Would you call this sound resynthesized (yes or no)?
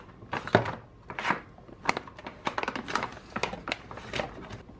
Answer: no